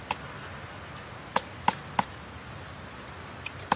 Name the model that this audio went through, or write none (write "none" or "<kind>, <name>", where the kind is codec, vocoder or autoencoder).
none